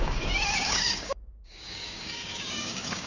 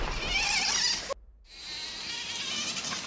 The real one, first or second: second